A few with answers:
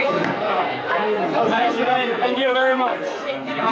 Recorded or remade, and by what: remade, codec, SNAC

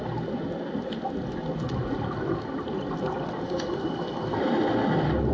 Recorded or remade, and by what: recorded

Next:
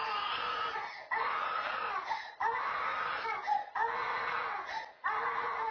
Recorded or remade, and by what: recorded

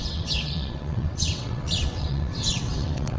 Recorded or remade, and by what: remade, vocoder, WaveNeXt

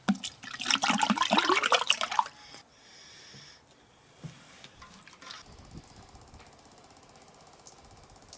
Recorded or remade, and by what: recorded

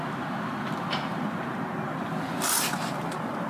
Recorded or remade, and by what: recorded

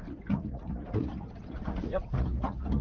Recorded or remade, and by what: remade, vocoder, Vocos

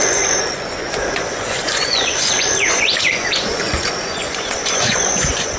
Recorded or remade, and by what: remade, vocoder, Vocos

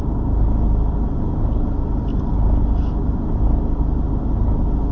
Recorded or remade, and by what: recorded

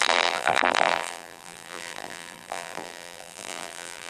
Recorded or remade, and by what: remade, vocoder, BigVGAN v2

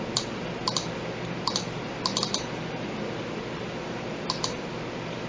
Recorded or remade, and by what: recorded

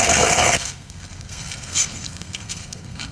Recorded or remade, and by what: remade, codec, SNAC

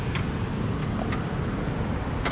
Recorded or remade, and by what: recorded